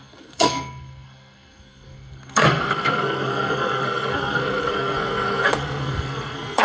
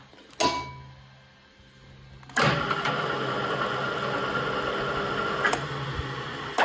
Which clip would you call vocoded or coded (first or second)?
first